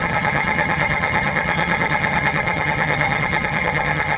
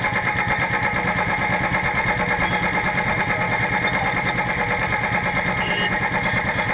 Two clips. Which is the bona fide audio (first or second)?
second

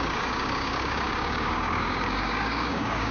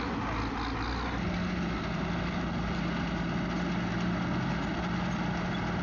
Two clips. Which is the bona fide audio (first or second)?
second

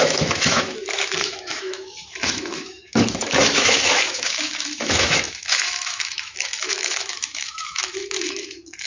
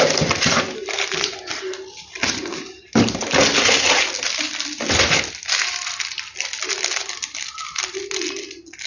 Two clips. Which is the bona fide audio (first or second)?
second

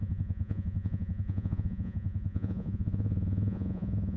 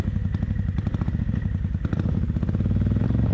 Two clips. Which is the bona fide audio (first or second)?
second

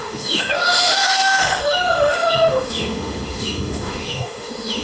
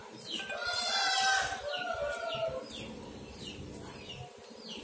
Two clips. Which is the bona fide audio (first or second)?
second